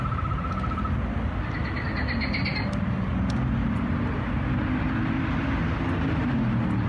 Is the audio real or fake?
real